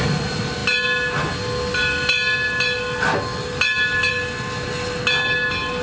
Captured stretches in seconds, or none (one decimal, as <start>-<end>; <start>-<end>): 0.0-5.8